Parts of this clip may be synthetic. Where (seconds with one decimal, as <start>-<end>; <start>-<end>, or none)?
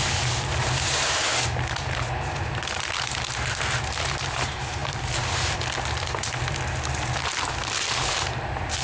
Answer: none